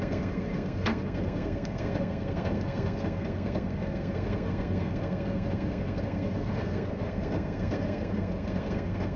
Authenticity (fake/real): fake